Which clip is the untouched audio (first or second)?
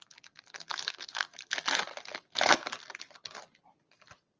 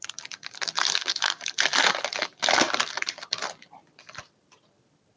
first